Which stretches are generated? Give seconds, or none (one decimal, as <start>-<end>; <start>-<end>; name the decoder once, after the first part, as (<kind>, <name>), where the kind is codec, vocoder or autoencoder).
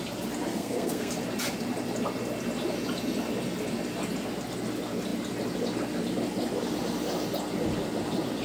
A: 0.5-1.1 (codec, SNAC)